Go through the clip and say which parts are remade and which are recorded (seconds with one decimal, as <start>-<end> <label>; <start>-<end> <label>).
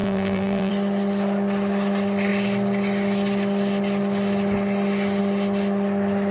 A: 0.0-0.7 remade; 0.7-6.3 recorded